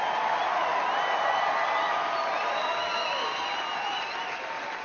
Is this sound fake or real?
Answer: real